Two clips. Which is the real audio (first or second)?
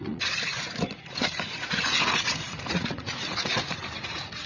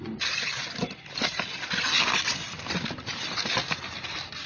second